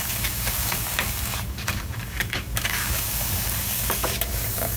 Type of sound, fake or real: fake